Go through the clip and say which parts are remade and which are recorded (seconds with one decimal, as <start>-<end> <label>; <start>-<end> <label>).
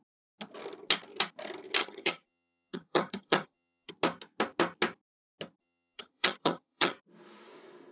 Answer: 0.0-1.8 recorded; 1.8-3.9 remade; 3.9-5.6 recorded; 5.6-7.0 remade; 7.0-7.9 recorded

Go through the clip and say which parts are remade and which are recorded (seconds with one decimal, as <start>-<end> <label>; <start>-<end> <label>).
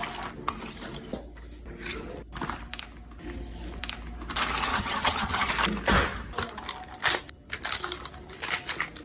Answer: 0.0-4.7 recorded; 4.7-5.5 remade; 5.5-9.0 recorded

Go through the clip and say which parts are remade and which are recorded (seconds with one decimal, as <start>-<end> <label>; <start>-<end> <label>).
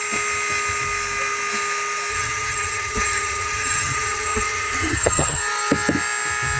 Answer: 0.0-2.1 recorded; 2.1-5.4 remade; 5.4-6.6 recorded